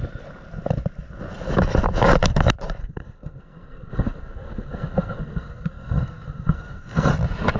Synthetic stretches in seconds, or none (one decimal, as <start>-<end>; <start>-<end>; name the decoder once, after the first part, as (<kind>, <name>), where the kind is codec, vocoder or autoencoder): 2.8-7.1 (codec, SNAC)